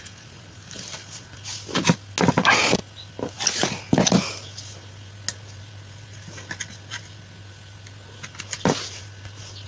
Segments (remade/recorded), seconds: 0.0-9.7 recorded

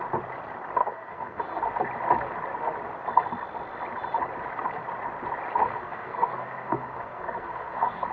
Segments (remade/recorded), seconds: 0.0-0.8 recorded; 0.8-1.4 remade; 1.4-5.6 recorded; 5.6-8.1 remade

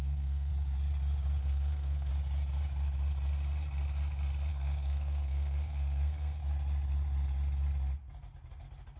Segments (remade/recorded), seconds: 0.0-0.5 remade; 0.5-1.4 recorded; 1.4-2.1 remade; 2.1-4.5 recorded; 4.5-6.4 remade; 6.4-9.0 recorded

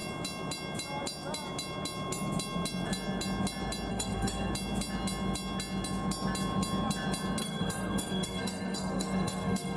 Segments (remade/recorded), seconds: 0.0-3.9 recorded; 3.9-4.5 remade; 4.5-7.4 recorded; 7.4-9.8 remade

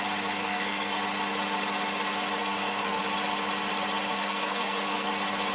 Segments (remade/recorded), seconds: 0.0-0.4 recorded; 0.4-1.0 remade; 1.0-2.4 recorded; 2.4-3.0 remade; 3.0-4.1 recorded; 4.1-5.1 remade; 5.1-5.5 recorded

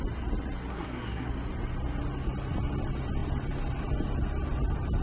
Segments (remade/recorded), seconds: 0.0-0.7 recorded; 0.7-1.3 remade; 1.3-5.0 recorded

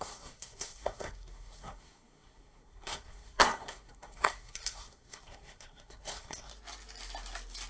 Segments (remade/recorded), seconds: 0.0-6.5 remade; 6.5-7.7 recorded